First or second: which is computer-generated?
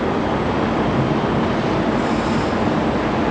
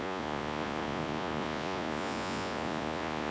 second